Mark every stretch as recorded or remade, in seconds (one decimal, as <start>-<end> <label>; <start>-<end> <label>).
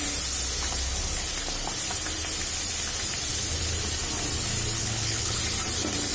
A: 0.0-4.8 recorded; 4.8-5.4 remade; 5.4-6.1 recorded